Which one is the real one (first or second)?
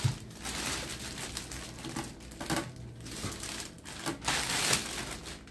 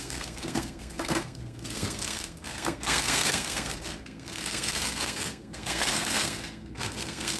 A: first